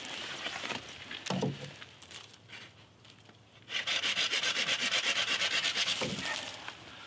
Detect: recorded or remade recorded